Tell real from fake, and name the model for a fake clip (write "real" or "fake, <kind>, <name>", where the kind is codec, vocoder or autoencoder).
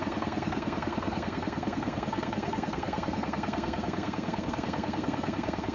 fake, codec, SNAC